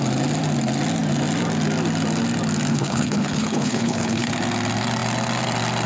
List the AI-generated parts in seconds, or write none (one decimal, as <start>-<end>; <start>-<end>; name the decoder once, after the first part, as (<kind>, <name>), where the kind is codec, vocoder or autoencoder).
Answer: 2.7-4.3 (codec, HILCodec)